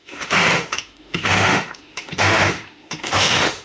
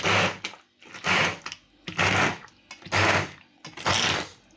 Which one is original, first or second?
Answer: second